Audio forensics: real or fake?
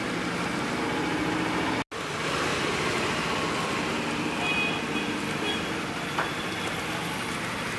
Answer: real